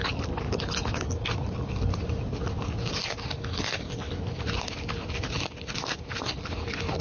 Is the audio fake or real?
real